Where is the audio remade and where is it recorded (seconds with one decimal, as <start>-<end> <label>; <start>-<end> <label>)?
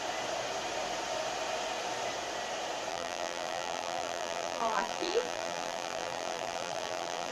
0.0-2.9 recorded; 2.9-7.3 remade